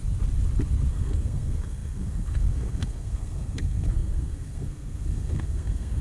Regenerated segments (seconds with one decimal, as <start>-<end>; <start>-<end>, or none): 0.9-6.0